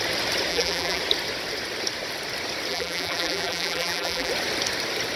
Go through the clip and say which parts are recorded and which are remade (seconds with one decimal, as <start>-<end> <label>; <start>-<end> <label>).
0.0-0.5 recorded; 0.5-1.0 remade; 1.0-2.7 recorded; 2.7-4.3 remade; 4.3-5.2 recorded